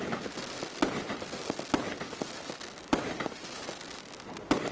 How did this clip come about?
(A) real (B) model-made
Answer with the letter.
A